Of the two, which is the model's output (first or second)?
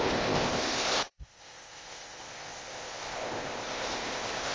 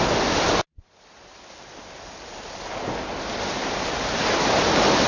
first